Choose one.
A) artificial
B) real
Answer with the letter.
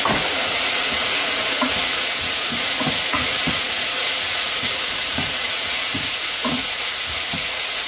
A